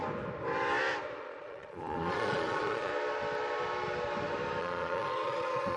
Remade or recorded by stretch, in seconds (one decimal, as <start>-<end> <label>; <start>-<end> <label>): 0.0-1.2 recorded; 1.2-2.9 remade; 2.9-4.6 recorded; 4.6-5.8 remade